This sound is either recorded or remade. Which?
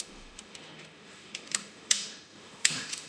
remade